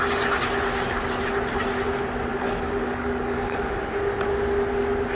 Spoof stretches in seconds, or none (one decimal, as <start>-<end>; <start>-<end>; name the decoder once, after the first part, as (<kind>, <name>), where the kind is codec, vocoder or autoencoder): 2.3-3.9 (codec, DAC)

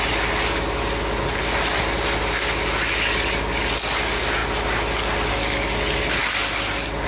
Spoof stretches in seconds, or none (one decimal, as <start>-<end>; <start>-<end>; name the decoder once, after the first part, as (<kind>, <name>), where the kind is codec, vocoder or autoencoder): none